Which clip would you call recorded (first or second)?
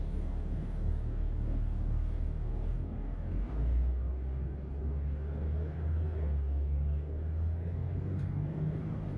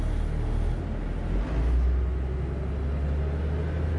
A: second